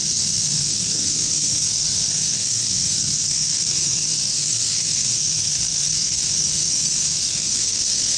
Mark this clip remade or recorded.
remade